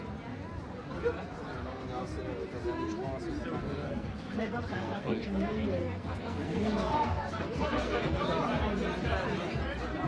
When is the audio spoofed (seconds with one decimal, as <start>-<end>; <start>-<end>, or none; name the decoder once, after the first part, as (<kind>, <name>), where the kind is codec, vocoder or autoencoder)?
3.6-8.2 (codec, SNAC)

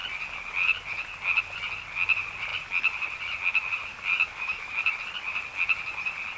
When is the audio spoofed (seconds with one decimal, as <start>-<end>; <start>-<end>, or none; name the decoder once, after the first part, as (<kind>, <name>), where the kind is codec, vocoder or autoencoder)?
4.1-4.8 (autoencoder, DAC-VAE)

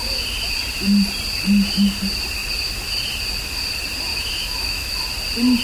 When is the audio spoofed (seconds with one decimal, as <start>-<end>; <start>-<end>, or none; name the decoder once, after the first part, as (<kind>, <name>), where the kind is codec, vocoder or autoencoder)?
4.1-5.0 (autoencoder, DAC-VAE)

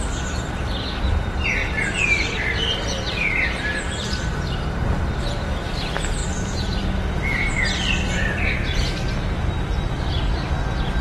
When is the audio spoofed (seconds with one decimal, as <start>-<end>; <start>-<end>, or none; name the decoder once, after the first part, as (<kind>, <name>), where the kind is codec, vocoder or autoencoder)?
1.6-4.2 (vocoder, BigVGAN v2); 6.2-9.5

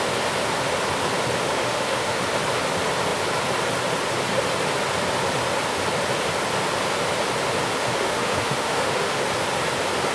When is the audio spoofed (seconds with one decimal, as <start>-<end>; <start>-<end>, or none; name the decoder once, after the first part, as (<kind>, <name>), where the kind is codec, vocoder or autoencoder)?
1.4-2.2 (autoencoder, DAC-VAE); 7.8-9.2

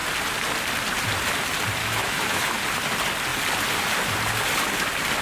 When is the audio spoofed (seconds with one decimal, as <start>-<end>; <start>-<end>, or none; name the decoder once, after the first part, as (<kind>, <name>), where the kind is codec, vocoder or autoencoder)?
1.8-2.6 (autoencoder, DAC-VAE)

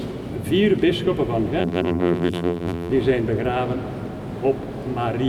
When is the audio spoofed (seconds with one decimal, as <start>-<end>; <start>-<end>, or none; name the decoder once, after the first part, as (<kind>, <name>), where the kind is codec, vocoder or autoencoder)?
1.6-2.9 (vocoder, BigVGAN v2)

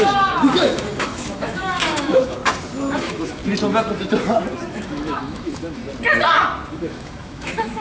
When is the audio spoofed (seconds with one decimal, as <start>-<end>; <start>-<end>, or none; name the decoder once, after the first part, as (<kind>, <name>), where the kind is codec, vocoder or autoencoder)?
0.0-2.4 (autoencoder, DAC-VAE); 3.0-3.4; 4.7-5.8; 6.7-7.8